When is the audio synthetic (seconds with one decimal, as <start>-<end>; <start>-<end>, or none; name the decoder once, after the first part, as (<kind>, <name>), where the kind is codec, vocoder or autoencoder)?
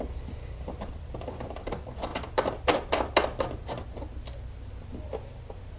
0.0-2.1 (vocoder, BigVGAN v2)